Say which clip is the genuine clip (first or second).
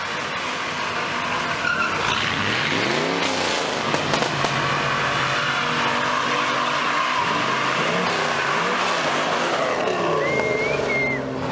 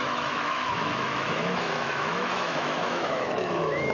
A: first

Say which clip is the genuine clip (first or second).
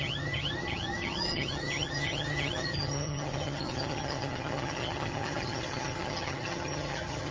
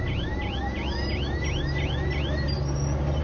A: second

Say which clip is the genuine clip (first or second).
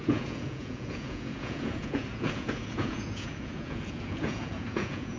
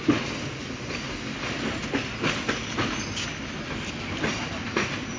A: second